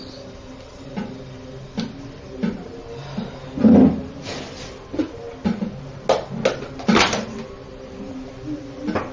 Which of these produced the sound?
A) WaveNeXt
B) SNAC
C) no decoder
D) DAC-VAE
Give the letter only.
C